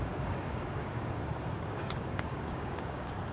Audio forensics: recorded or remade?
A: remade